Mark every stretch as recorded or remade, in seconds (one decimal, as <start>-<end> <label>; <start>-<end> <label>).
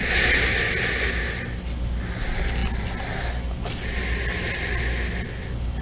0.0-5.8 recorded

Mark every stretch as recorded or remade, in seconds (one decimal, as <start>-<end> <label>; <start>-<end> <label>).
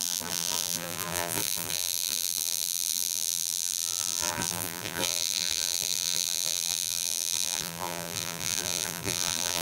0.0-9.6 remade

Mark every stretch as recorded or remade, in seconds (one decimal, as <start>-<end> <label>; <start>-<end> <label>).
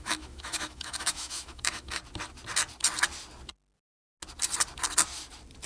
0.0-2.0 remade; 2.0-5.7 recorded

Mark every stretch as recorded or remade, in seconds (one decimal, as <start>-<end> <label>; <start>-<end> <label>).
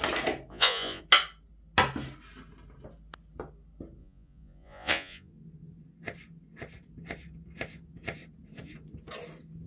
0.0-0.5 recorded; 0.5-1.0 remade; 1.0-4.0 recorded; 4.0-5.3 remade; 5.3-9.7 recorded